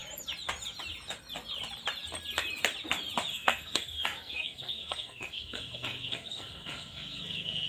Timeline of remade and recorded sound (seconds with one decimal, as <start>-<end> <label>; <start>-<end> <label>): 0.0-3.3 recorded; 3.3-7.7 remade